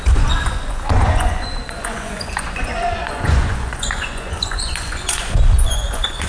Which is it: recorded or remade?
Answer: remade